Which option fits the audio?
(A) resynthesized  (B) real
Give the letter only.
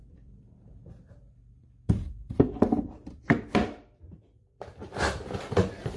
A